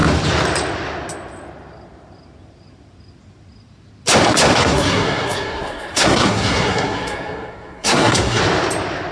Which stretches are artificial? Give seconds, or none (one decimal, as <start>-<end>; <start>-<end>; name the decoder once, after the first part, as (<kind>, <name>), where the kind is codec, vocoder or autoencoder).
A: 4.6-8.4 (codec, SNAC)